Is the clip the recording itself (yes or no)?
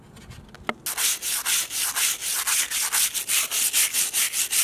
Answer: yes